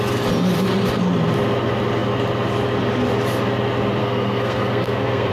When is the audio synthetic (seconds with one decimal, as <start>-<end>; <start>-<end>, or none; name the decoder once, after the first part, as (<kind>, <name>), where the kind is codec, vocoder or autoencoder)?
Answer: 4.0-5.3 (codec, SNAC)